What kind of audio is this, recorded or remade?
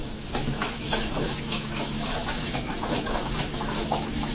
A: remade